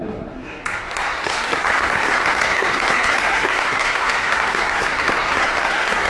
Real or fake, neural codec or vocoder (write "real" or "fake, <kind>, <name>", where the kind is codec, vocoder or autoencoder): fake, codec, SNAC